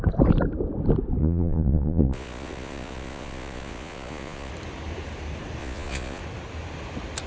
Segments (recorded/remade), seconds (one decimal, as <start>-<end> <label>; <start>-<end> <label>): 0.0-1.2 recorded; 1.2-4.5 remade; 4.5-5.6 recorded; 5.6-6.2 remade; 6.2-7.3 recorded